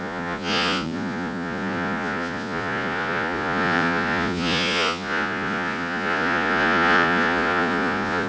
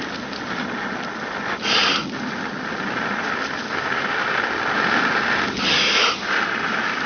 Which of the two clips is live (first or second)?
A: second